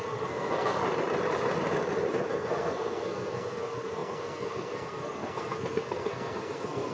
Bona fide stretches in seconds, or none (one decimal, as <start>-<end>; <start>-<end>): 0.8-2.3